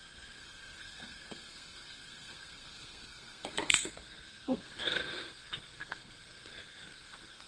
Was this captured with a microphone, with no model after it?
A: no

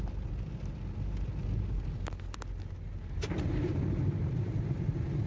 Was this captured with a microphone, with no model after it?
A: yes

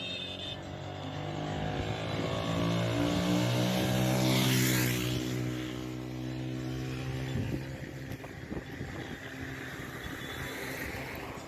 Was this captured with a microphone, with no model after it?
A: yes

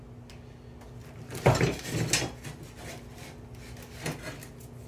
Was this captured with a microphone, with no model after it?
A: yes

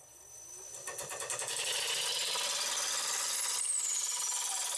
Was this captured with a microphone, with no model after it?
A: yes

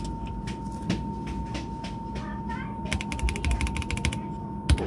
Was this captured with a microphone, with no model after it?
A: yes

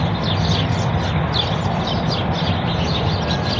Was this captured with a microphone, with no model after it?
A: yes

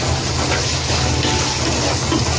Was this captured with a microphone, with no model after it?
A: yes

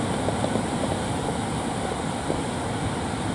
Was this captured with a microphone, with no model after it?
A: yes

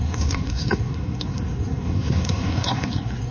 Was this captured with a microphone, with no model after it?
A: no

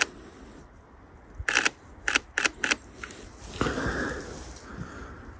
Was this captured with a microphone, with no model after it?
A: yes